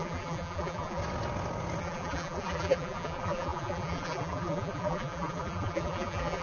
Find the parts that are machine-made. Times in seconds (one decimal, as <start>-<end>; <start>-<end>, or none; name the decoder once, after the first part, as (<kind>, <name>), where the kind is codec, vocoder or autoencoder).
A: 0.0-1.0 (vocoder, BigVGAN v2); 1.8-6.4

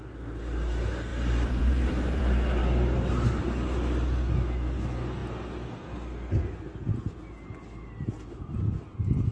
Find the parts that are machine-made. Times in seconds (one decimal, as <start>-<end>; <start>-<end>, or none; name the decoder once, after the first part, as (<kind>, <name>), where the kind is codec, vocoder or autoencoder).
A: 1.1-2.2 (vocoder, BigVGAN v2)

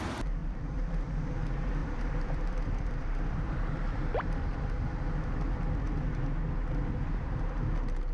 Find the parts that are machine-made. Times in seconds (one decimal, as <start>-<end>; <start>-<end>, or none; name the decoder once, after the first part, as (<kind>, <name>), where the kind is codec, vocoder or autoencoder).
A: 0.4-1.1 (vocoder, BigVGAN v2); 1.8-5.0

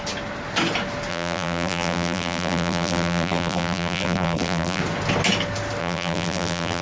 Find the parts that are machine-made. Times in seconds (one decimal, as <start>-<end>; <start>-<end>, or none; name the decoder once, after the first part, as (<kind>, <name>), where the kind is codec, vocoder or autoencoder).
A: 1.1-4.8 (vocoder, BigVGAN v2); 5.8-6.8

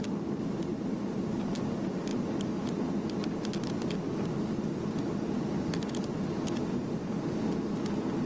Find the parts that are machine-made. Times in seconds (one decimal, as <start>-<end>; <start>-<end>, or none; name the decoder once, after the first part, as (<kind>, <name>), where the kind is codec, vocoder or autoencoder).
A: 0.7-1.5 (vocoder, BigVGAN v2)

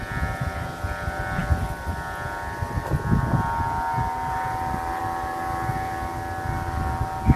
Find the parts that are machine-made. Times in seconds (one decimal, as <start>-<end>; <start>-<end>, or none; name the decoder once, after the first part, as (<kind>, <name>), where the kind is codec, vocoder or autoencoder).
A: none

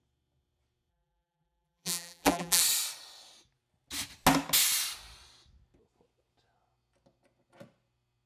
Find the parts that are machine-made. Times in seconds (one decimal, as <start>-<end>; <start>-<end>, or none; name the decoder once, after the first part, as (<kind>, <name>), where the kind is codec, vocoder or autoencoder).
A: 0.9-2.6 (vocoder, BigVGAN v2)